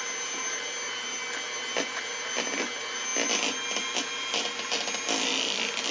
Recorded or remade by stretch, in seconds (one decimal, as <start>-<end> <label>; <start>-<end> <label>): 0.0-5.9 recorded